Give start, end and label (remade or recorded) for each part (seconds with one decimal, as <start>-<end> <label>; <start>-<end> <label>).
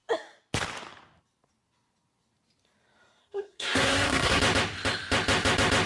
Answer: 0.0-3.2 recorded; 3.2-4.4 remade; 4.4-5.9 recorded